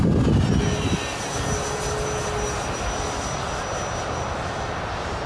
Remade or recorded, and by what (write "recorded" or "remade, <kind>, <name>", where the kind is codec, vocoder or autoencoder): recorded